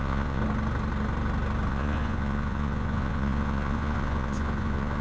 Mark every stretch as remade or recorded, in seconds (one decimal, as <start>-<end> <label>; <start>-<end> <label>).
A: 0.0-0.4 remade; 0.4-1.7 recorded; 1.7-5.0 remade